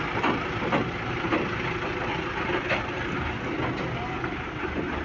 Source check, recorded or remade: recorded